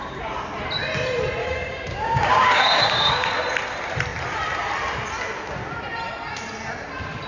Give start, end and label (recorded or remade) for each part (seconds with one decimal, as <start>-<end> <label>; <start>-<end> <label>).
0.0-1.4 recorded; 1.4-3.3 remade; 3.3-7.3 recorded